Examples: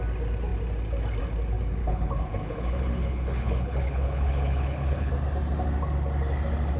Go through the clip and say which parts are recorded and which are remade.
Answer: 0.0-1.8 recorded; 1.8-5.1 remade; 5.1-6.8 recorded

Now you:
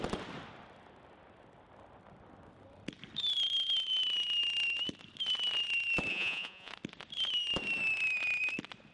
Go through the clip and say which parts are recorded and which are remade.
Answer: 0.0-6.1 recorded; 6.1-6.7 remade; 6.7-8.9 recorded

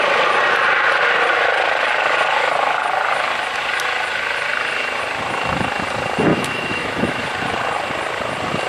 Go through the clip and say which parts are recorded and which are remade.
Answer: 0.0-6.3 recorded; 6.3-7.2 remade; 7.2-8.7 recorded